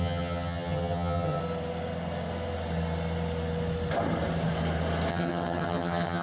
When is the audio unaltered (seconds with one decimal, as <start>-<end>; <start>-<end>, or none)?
1.4-5.1